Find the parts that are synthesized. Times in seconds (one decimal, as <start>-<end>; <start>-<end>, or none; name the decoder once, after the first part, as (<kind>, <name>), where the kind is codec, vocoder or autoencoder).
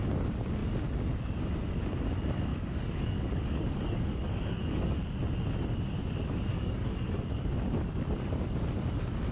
2.5-5.0 (codec, DAC); 6.5-7.4